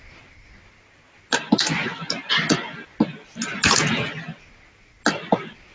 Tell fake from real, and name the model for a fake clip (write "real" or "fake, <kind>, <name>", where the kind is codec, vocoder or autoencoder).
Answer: real